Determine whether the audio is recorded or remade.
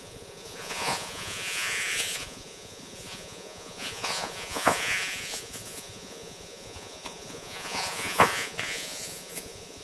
remade